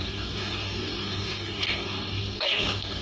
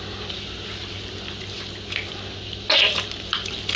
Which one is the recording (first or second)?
second